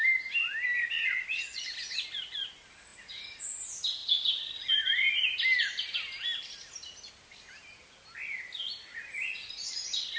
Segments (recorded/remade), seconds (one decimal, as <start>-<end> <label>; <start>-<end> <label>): 0.0-1.0 recorded; 1.0-1.7 remade; 1.7-10.2 recorded